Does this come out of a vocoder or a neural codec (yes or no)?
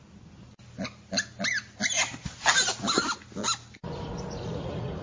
no